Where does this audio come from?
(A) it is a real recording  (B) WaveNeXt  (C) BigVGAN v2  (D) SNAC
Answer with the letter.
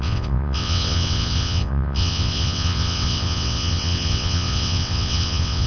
B